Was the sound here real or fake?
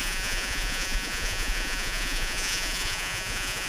fake